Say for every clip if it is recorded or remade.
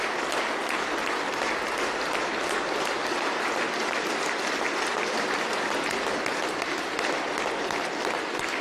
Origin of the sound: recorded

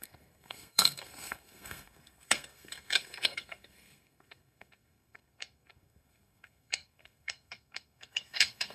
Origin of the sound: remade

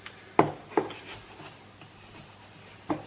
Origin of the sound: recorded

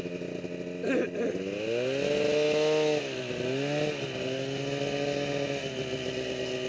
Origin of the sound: recorded